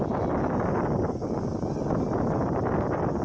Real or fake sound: real